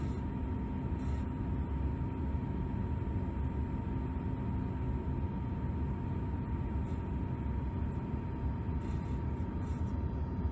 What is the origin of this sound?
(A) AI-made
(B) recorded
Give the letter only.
B